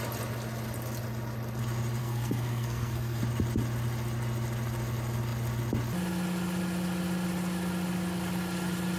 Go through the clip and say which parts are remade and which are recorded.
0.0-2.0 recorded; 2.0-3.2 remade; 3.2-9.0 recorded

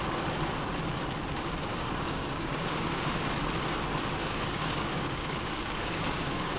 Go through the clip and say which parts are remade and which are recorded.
0.0-1.7 recorded; 1.7-2.9 remade; 2.9-4.2 recorded; 4.2-6.6 remade